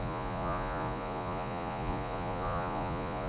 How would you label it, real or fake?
fake